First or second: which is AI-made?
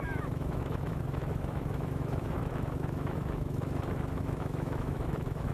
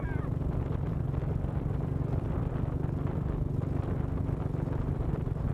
first